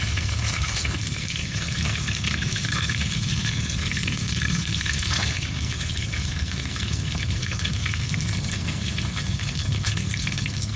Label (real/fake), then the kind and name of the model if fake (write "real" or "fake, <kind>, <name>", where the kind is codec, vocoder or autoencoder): fake, codec, SNAC